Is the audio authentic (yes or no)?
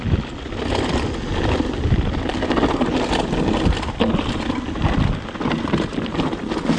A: yes